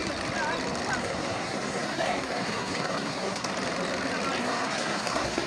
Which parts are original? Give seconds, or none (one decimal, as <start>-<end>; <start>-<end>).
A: 0.0-1.0; 3.5-4.4